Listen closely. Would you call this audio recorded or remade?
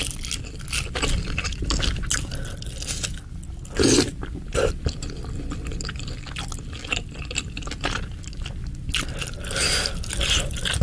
recorded